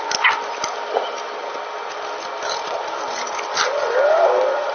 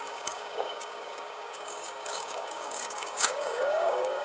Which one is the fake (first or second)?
second